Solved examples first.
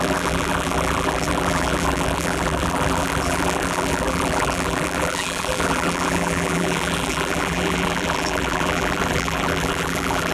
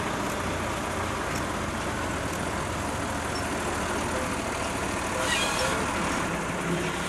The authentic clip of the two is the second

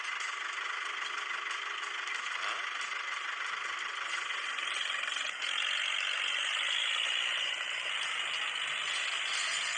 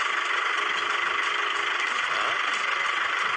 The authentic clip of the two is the first